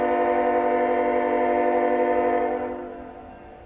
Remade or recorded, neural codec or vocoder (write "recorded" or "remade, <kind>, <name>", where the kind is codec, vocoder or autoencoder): recorded